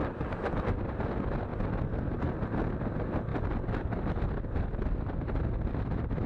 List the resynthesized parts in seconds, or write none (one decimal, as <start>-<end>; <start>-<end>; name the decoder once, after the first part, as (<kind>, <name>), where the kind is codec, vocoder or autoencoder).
none